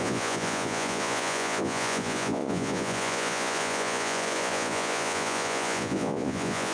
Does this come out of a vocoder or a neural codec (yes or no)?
yes